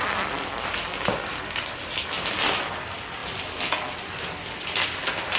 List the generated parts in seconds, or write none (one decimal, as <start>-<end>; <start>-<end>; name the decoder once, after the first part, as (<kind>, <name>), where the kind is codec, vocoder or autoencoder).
none